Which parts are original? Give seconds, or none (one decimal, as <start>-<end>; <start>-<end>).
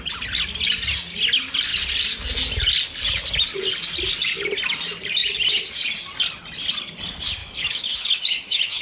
0.0-7.4